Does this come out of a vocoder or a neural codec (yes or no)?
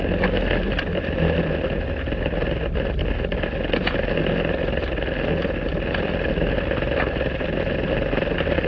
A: no